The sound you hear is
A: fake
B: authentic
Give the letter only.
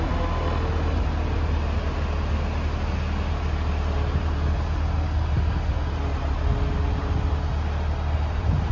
B